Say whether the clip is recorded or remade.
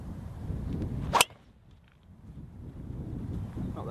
recorded